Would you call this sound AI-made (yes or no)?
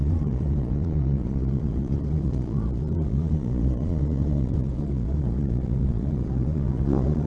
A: yes